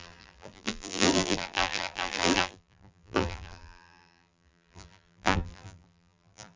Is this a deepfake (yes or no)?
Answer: yes